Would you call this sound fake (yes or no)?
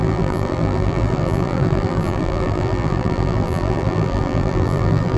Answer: yes